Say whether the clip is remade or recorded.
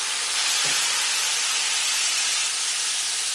recorded